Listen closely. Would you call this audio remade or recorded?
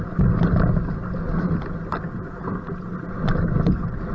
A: recorded